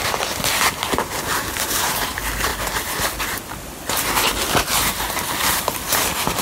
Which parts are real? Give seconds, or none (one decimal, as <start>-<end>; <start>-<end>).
0.0-6.4